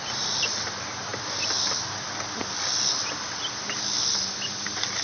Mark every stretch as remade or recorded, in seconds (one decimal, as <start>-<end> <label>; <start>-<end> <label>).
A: 0.0-5.0 recorded